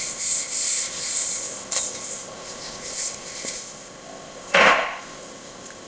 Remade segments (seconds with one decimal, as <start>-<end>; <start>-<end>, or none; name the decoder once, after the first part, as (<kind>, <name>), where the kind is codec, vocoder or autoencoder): 0.0-5.9 (codec, ZipCodec)